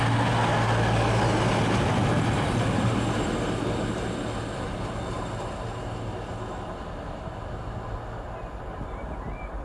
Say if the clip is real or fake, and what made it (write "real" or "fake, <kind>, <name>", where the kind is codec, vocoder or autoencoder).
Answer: real